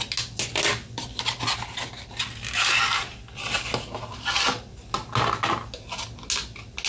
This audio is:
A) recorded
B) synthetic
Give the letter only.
A